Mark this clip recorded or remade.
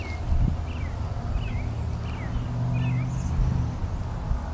recorded